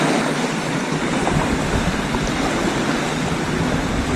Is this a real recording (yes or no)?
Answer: yes